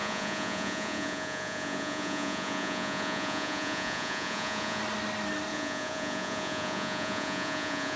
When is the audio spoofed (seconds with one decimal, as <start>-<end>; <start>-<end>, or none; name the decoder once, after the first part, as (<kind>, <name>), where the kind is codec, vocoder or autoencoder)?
0.0-4.8 (vocoder, Vocos); 5.5-8.0